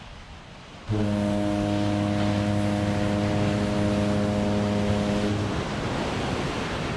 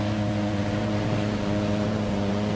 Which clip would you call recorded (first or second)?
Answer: first